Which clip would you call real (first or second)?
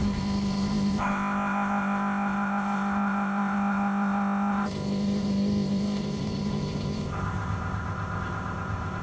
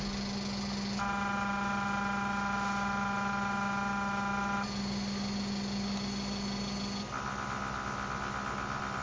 second